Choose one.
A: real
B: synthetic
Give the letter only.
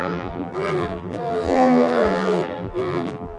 B